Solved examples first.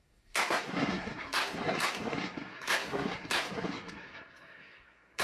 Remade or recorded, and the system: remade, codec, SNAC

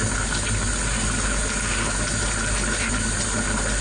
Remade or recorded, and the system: recorded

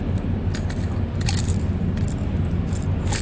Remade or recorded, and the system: recorded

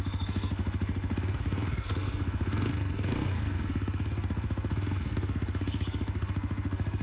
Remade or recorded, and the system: remade, codec, SNAC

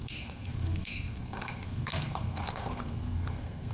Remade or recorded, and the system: remade, codec, SNAC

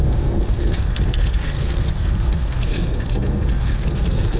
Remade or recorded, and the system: remade, codec, SNAC